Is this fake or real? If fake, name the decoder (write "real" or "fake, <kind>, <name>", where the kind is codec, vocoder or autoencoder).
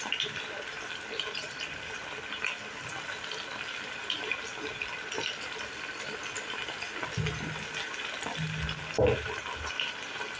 real